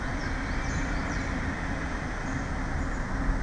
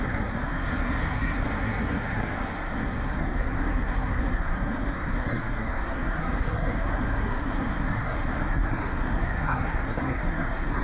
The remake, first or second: second